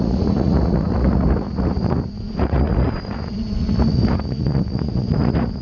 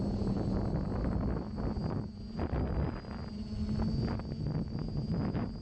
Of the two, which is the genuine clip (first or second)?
second